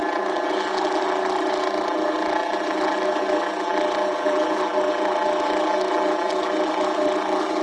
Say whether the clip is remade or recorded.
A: remade